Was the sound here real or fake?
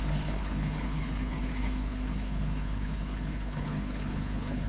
fake